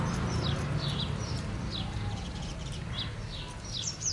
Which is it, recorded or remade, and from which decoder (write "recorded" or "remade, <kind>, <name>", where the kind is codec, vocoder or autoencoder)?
recorded